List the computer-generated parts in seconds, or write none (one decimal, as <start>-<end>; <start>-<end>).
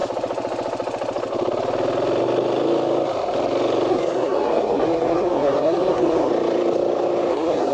3.9-6.3; 7.3-7.7